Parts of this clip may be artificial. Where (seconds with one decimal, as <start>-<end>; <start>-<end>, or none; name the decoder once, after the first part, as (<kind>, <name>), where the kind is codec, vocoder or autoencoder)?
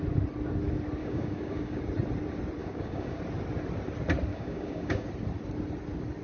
1.0-1.8 (codec, DAC); 2.6-3.2; 4.3-5.1